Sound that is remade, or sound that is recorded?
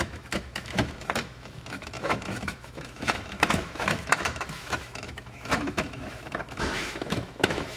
remade